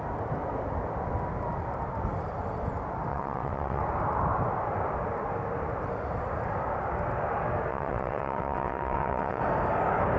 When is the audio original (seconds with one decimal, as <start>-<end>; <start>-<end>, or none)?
0.0-3.1; 3.8-7.7; 9.4-10.2